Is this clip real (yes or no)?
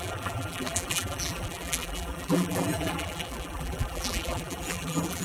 no